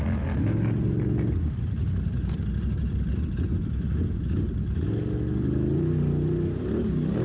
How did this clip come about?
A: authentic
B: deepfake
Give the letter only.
A